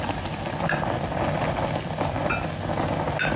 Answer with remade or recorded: recorded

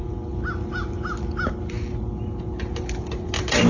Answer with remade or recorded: recorded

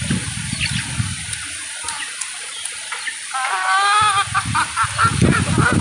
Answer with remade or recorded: recorded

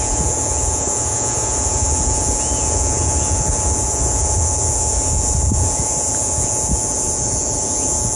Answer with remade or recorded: remade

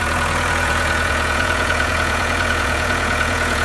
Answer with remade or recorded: remade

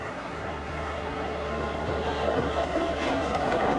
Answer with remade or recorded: remade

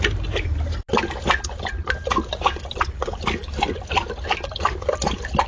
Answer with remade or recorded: recorded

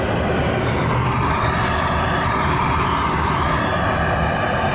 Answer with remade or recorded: remade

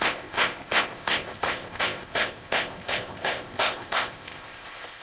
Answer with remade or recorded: remade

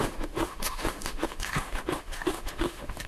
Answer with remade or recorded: remade